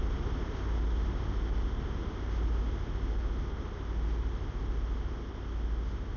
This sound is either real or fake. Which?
real